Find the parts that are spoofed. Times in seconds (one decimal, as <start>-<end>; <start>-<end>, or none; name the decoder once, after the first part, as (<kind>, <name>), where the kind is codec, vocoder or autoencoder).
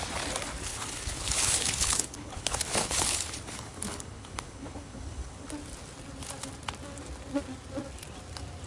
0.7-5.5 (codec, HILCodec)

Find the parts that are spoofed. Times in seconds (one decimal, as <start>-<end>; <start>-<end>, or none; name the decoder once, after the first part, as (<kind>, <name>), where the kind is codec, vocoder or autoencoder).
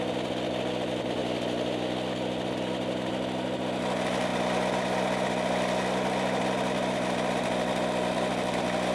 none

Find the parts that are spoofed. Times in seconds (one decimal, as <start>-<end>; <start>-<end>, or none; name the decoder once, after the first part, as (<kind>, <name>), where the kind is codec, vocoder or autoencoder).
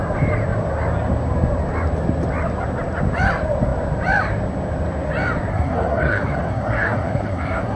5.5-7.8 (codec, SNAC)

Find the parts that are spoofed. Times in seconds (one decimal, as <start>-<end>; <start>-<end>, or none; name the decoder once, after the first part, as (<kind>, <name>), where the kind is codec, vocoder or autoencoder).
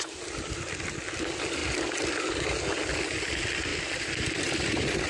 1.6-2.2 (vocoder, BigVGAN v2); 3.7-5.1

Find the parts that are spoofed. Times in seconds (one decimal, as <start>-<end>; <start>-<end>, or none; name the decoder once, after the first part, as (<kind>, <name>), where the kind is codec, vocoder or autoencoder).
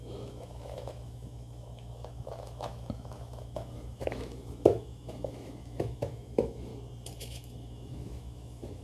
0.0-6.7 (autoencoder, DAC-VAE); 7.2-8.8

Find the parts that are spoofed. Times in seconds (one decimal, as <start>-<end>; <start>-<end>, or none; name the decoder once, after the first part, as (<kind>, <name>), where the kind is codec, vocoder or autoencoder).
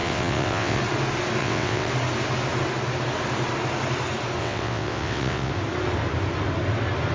0.0-0.8 (vocoder, WaveNeXt); 1.4-1.9; 4.4-5.5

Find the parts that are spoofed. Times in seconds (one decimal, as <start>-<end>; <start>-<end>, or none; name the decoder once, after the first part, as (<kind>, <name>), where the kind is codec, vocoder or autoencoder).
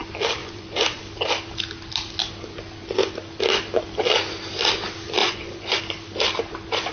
0.4-1.0 (vocoder, Vocos); 5.2-5.8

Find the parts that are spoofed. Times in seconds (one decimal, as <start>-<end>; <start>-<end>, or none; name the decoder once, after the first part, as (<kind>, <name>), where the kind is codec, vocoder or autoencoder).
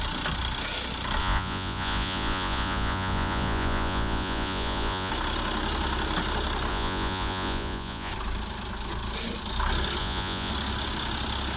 1.2-5.1 (vocoder, Vocos); 6.7-8.1; 10.0-10.5